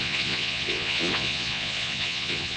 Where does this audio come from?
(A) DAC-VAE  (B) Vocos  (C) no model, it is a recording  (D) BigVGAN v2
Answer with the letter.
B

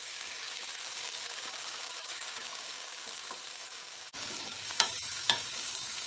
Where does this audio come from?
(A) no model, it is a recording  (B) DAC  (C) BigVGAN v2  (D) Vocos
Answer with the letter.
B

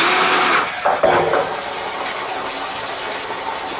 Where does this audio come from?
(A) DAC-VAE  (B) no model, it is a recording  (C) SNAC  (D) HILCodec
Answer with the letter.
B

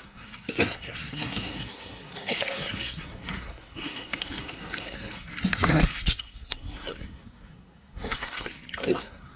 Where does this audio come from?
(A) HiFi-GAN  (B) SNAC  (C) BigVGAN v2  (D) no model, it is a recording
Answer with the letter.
B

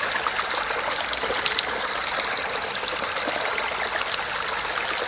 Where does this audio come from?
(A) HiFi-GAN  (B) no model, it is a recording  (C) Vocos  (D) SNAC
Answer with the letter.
B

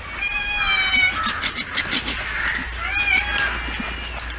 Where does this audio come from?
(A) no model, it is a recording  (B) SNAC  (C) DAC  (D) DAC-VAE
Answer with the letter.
A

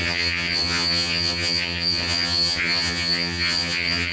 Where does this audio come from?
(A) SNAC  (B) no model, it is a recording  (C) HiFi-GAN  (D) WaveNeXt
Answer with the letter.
C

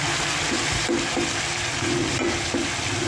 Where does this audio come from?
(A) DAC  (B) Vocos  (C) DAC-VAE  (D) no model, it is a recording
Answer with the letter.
D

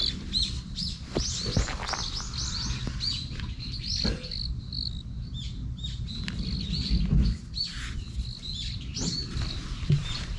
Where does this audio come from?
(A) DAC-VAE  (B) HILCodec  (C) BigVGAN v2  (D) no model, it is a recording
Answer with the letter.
D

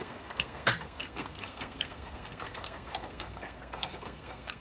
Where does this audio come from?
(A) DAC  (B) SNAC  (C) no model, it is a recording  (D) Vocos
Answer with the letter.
B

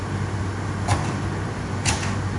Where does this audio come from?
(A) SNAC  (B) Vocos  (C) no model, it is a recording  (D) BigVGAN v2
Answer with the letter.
C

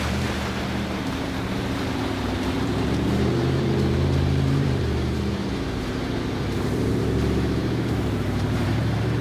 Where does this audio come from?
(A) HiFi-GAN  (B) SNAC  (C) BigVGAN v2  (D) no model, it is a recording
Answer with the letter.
C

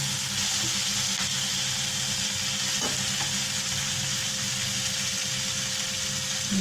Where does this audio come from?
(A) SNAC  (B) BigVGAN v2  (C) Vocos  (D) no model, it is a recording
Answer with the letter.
D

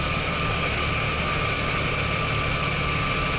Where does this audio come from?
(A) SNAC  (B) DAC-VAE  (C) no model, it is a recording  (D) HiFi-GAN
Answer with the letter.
C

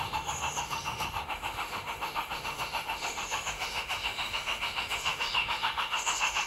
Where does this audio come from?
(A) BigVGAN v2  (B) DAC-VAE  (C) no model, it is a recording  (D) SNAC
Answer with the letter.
B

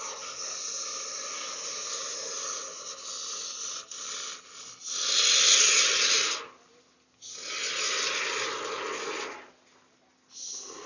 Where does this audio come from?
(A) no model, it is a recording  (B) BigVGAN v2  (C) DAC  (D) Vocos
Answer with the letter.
A